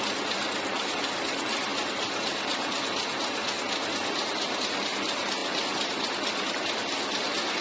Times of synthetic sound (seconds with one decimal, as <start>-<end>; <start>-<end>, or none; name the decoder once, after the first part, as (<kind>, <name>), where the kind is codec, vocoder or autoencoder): none